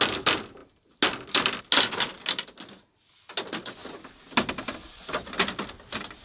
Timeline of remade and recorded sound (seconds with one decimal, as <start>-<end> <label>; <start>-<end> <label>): 0.0-6.2 recorded